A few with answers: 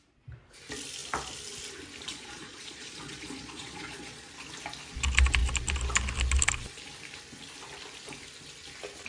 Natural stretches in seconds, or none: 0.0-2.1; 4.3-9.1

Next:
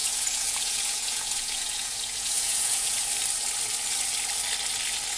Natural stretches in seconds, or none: 3.1-5.2

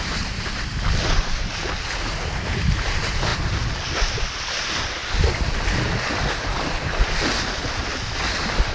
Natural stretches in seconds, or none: 0.0-8.7

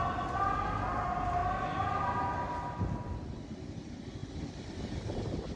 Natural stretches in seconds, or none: 0.0-5.6

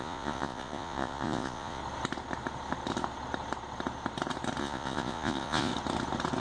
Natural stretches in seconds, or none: 1.8-4.6; 5.7-6.4

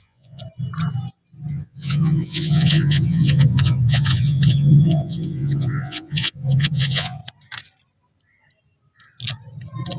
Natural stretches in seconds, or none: 0.4-1.5; 7.2-10.0

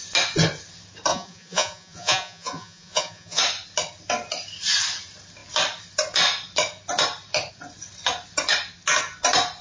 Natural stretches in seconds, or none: 0.0-1.1; 3.4-9.6